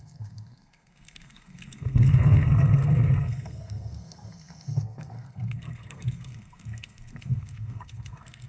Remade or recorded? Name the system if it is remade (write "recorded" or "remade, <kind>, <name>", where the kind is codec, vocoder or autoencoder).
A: remade, codec, SNAC